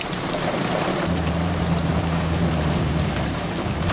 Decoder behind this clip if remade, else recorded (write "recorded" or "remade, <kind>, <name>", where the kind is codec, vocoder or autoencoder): remade, vocoder, BigVGAN v2